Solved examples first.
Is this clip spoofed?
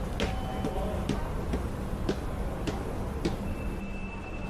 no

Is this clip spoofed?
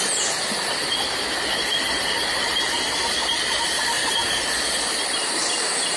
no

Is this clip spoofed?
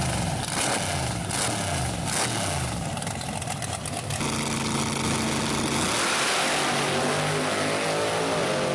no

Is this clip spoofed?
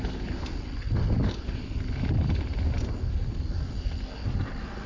no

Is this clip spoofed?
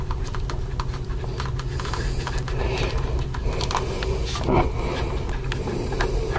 no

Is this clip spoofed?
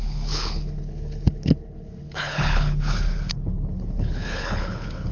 yes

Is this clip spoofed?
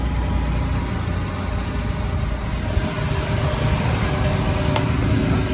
no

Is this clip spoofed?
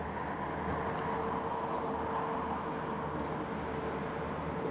no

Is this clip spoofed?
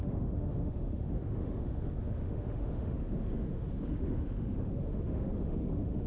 yes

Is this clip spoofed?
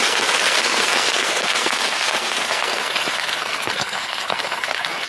yes